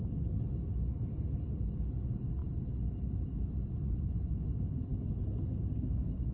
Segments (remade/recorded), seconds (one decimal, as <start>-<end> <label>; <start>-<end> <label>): 0.0-2.4 recorded; 2.4-3.9 remade; 3.9-6.3 recorded